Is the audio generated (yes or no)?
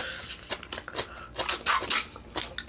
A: no